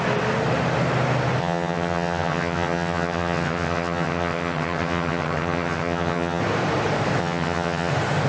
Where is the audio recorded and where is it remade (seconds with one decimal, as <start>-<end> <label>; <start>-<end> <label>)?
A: 0.0-1.4 recorded; 1.4-6.4 remade; 6.4-7.2 recorded; 7.2-7.9 remade; 7.9-8.3 recorded